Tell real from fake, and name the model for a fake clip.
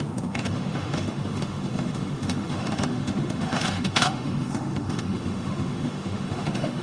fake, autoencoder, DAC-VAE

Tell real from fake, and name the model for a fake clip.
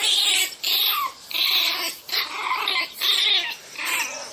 real